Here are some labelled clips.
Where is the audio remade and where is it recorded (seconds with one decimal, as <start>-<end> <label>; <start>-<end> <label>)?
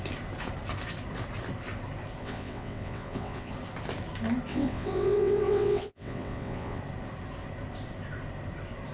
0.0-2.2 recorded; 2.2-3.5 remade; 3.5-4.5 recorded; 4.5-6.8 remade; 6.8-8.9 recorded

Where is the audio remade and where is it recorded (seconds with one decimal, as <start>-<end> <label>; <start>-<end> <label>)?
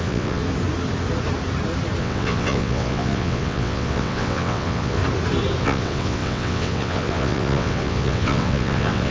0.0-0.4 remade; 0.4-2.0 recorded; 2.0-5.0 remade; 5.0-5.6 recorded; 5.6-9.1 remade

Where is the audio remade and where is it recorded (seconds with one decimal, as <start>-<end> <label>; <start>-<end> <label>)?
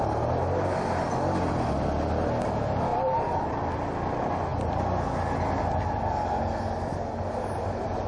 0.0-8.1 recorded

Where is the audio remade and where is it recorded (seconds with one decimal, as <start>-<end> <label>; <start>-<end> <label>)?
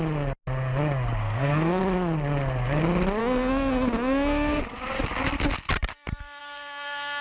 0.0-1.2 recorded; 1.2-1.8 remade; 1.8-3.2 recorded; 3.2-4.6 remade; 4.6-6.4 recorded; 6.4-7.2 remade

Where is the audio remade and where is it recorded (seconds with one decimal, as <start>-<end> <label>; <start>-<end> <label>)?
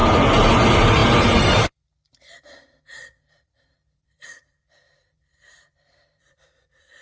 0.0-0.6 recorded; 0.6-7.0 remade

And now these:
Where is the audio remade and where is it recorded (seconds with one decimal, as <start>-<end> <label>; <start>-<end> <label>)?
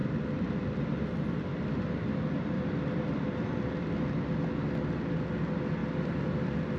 0.0-4.1 remade; 4.1-5.8 recorded; 5.8-6.8 remade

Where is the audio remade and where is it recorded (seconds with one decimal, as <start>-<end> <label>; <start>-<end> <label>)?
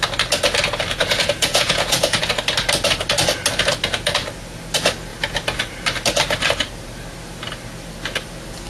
0.0-1.0 recorded; 1.0-2.3 remade; 2.3-8.7 recorded